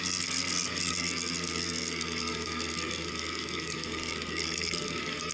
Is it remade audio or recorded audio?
remade